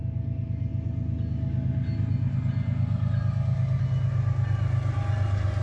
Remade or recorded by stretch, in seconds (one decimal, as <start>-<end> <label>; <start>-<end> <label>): 0.0-5.6 recorded